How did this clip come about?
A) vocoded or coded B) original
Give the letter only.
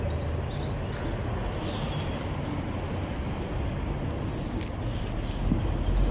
B